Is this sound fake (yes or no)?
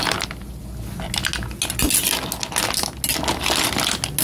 no